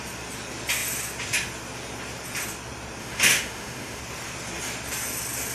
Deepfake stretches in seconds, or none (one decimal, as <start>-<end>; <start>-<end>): 3.0-4.0